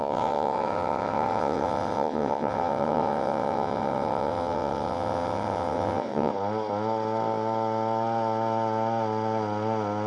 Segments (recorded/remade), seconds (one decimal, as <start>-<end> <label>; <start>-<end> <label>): 0.0-6.3 remade; 6.3-10.1 recorded